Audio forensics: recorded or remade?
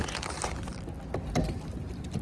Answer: recorded